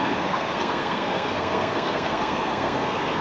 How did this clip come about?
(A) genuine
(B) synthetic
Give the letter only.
B